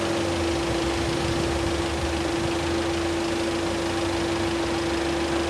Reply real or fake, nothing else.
real